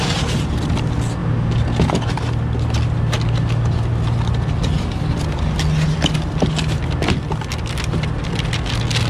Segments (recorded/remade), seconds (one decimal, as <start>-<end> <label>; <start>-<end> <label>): 0.0-9.1 recorded